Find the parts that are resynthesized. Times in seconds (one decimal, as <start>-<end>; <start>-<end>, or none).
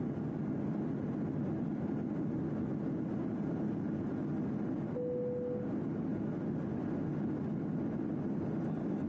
none